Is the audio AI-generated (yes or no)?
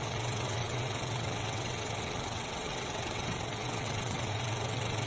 yes